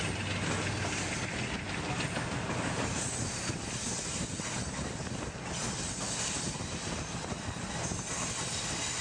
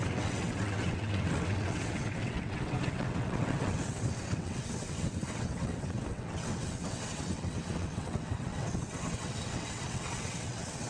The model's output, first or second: second